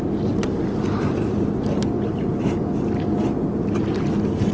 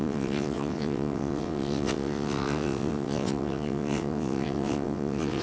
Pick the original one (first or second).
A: first